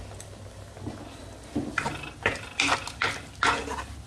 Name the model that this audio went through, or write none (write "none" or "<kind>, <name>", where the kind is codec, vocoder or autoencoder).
none